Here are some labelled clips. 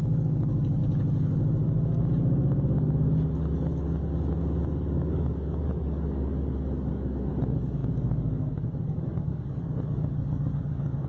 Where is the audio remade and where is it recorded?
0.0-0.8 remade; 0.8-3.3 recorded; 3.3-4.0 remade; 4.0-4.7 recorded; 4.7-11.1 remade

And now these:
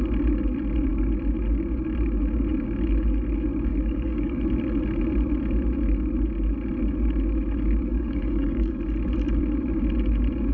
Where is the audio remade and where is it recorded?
0.0-3.7 recorded; 3.7-4.4 remade; 4.4-7.9 recorded; 7.9-8.8 remade; 8.8-10.5 recorded

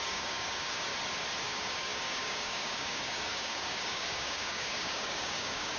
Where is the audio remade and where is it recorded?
0.0-0.9 remade; 0.9-1.4 recorded; 1.4-5.8 remade

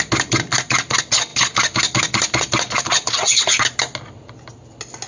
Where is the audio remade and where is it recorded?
0.0-5.1 recorded